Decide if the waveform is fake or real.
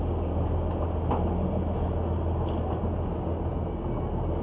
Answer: real